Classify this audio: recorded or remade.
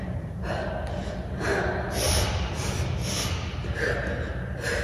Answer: recorded